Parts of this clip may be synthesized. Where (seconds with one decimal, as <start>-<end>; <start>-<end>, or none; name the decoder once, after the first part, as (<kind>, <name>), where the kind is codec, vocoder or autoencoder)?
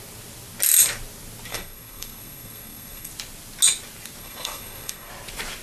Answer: 1.5-3.1 (codec, SNAC); 4.2-5.1